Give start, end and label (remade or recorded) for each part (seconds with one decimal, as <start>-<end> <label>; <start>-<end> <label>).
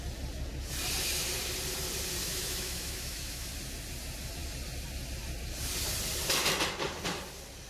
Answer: 0.0-2.2 recorded; 2.2-3.5 remade; 3.5-7.7 recorded